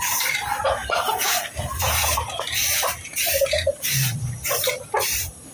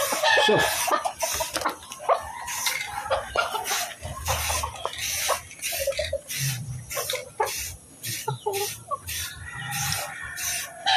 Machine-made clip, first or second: first